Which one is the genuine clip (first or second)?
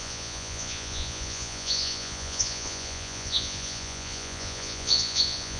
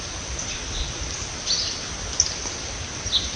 second